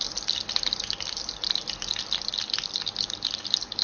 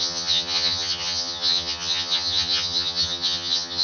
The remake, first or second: second